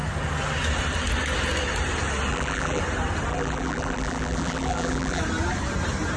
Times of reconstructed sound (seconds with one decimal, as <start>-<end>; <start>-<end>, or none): 2.3-2.8; 3.3-5.2